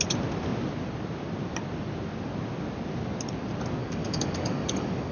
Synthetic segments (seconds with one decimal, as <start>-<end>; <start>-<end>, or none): 3.8-5.1